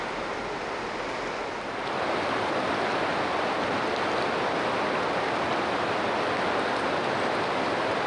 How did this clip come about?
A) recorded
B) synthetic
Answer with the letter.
A